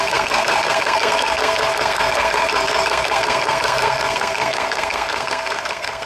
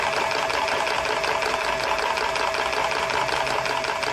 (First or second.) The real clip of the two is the second